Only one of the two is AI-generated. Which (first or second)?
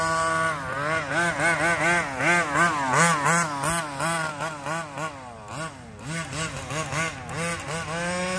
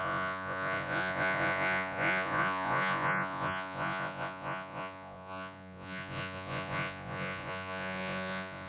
second